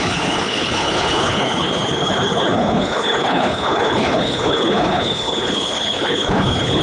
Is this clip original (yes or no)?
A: no